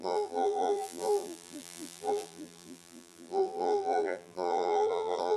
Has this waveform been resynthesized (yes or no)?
yes